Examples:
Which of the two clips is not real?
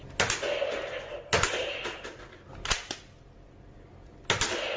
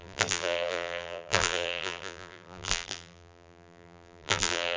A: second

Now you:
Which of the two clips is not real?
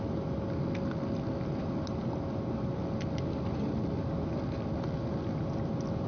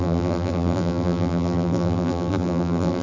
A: second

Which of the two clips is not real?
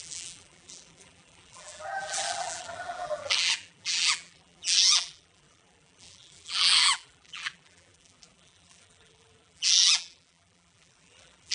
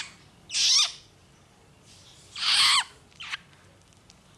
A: first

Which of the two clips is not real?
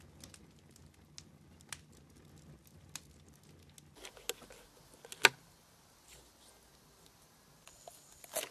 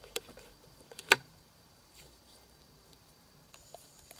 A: second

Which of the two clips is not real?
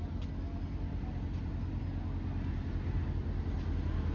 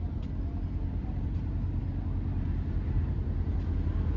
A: second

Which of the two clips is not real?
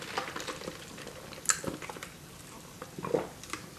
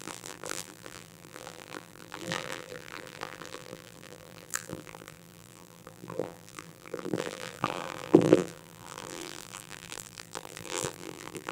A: second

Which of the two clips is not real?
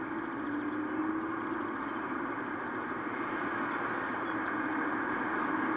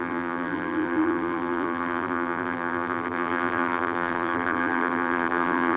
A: second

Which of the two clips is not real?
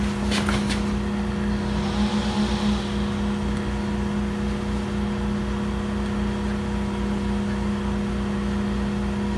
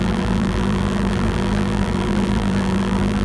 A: second